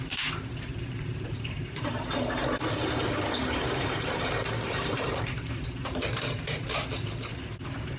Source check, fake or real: fake